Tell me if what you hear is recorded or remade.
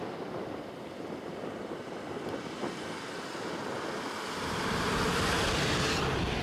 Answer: recorded